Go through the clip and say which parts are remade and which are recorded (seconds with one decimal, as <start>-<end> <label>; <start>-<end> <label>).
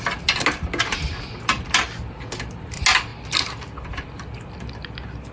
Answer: 0.0-5.3 recorded